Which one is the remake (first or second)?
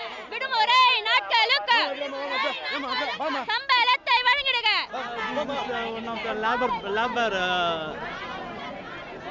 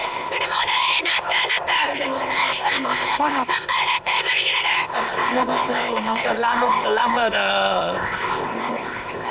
second